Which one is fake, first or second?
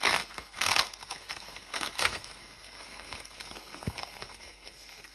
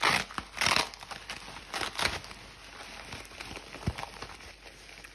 first